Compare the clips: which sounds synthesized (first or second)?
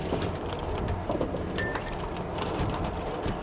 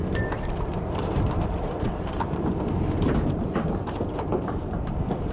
second